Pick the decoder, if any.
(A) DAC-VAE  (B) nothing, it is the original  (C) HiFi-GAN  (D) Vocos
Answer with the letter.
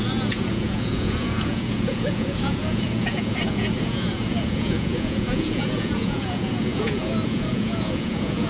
D